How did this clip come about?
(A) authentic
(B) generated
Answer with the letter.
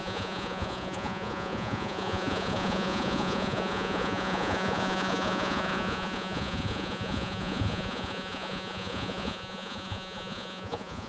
B